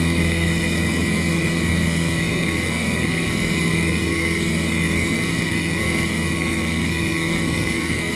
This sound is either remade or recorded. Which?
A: remade